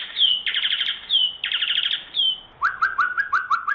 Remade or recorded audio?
recorded